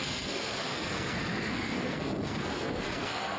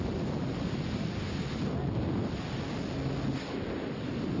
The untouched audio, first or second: second